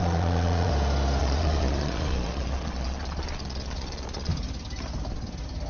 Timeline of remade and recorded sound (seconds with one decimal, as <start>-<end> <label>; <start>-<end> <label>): 0.0-0.7 remade; 0.7-1.2 recorded; 1.2-4.3 remade; 4.3-5.7 recorded